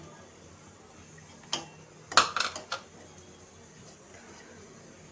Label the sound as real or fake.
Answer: real